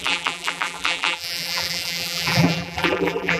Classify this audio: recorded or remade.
remade